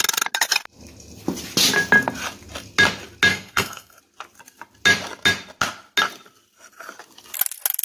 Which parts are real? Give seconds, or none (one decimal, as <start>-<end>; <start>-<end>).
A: 0.0-3.3; 4.0-7.8